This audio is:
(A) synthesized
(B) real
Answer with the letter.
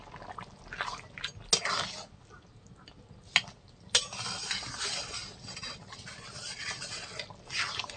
B